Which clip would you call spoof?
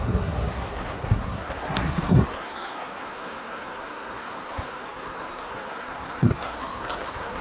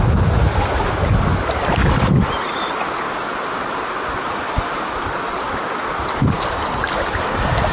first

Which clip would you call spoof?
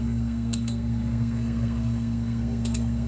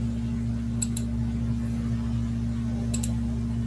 first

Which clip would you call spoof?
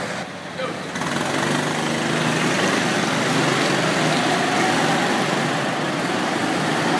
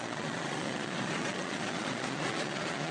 second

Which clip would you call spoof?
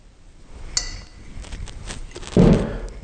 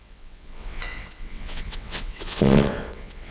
second